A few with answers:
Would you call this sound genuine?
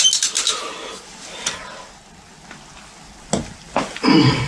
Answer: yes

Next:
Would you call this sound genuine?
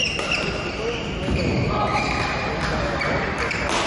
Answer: yes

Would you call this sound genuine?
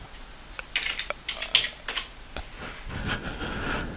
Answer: yes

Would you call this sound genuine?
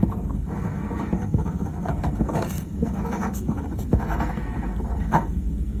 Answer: no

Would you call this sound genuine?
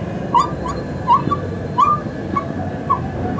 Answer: no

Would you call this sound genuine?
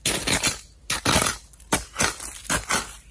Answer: yes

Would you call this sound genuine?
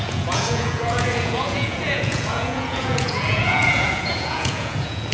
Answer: no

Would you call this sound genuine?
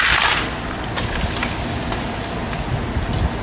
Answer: yes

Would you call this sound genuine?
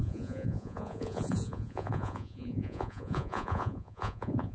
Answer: no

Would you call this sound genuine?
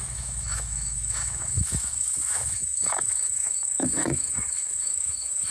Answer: no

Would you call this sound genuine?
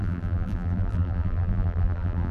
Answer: no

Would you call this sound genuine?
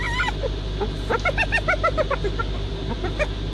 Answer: yes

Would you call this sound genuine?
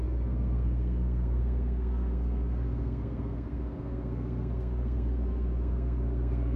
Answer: no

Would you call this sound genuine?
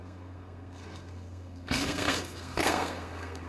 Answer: no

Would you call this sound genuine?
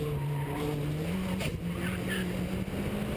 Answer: yes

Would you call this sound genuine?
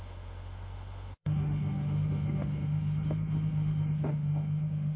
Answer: no